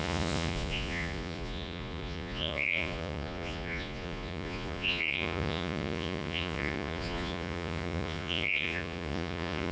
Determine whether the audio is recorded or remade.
remade